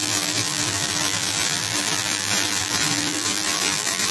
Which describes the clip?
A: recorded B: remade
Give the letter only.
B